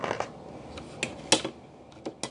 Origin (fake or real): real